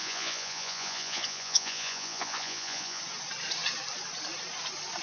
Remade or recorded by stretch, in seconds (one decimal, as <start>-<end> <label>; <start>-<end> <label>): 0.0-3.0 remade; 3.0-5.0 recorded